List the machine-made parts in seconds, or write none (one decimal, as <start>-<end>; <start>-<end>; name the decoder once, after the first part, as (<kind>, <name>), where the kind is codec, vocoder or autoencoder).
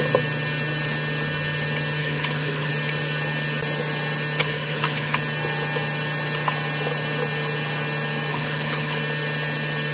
2.0-2.7 (codec, HILCodec); 4.4-5.2; 8.3-9.0